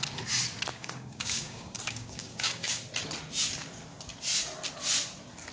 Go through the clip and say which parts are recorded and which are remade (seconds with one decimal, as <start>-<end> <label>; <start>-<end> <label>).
0.0-0.7 recorded; 0.7-2.8 remade; 2.8-5.5 recorded